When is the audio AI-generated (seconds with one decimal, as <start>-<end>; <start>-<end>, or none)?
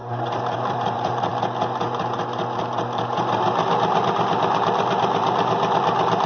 0.7-1.3; 4.4-6.3